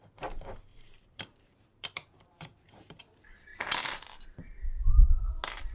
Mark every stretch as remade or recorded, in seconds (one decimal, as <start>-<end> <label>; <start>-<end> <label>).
0.0-0.7 recorded; 0.7-3.0 remade; 3.0-3.5 recorded; 3.5-4.9 remade; 4.9-5.7 recorded